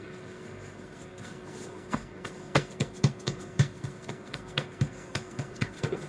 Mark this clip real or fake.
fake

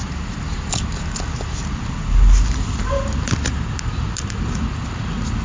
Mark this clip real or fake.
real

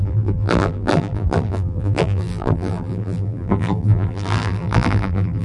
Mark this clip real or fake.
fake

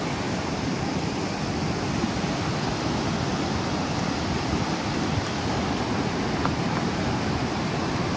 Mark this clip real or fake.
real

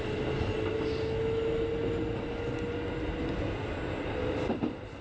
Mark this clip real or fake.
real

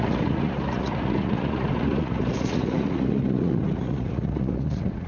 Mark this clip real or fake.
fake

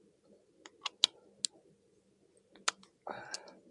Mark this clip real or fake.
real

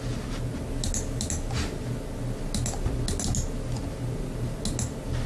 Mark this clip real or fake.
real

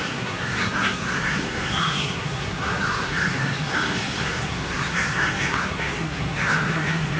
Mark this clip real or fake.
fake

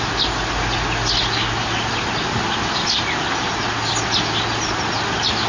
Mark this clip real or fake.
real